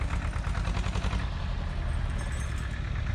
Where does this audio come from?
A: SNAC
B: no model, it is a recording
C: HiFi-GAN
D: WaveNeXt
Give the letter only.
B